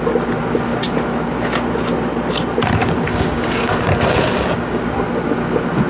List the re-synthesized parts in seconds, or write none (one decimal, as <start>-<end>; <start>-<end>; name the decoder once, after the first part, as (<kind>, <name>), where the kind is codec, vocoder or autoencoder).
2.8-4.8 (codec, DAC)